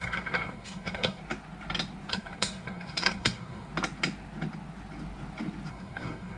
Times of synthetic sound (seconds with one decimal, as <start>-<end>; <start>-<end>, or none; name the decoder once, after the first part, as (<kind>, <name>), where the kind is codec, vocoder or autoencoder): 0.0-1.2 (codec, SNAC); 2.1-3.7; 5.7-6.4